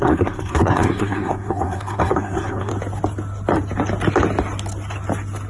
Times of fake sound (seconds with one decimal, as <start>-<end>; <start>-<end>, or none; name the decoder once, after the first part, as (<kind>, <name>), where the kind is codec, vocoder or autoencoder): 0.0-2.7 (codec, SNAC)